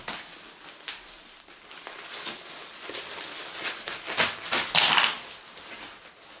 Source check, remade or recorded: recorded